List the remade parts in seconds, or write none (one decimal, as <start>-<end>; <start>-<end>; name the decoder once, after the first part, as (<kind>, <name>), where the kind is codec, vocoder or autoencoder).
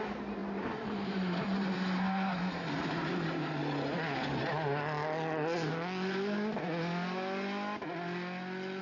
0.0-3.6 (vocoder, BigVGAN v2)